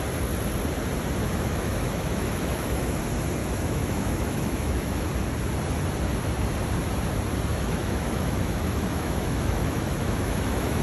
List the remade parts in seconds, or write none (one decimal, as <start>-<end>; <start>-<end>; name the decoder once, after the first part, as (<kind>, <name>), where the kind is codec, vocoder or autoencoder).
1.2-3.0 (autoencoder, DAC-VAE); 3.4-5.1; 7.5-10.8